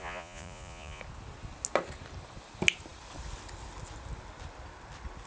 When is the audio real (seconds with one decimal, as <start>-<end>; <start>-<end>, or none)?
1.0-5.3